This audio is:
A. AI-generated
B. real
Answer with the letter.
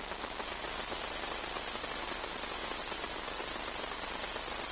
B